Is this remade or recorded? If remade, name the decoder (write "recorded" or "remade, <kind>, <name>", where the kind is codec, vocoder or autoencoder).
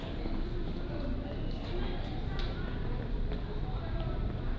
recorded